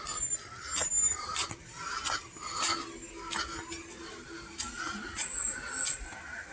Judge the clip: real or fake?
real